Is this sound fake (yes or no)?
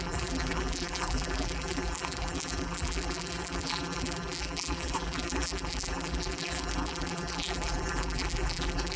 yes